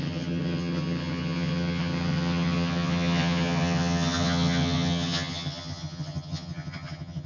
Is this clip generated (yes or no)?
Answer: yes